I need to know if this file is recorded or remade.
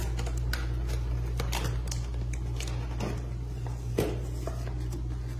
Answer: recorded